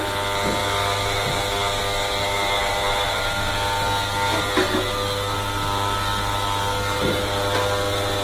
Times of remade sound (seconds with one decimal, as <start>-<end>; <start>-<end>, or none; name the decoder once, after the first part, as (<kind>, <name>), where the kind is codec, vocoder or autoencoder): none